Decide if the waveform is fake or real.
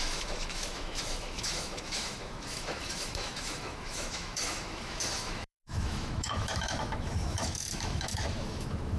fake